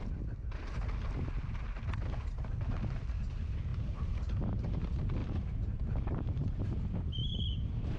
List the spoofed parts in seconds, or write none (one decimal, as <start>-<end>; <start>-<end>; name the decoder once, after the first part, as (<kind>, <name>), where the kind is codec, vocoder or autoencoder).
3.7-4.4 (vocoder, BigVGAN v2); 5.2-6.6; 7.2-8.0